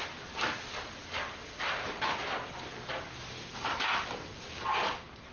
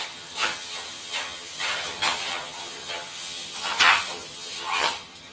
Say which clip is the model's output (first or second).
second